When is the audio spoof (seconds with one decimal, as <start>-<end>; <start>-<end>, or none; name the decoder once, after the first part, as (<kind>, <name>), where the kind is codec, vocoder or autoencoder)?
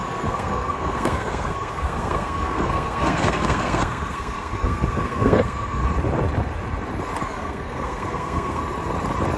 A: 0.0-5.8 (codec, SNAC); 7.2-8.6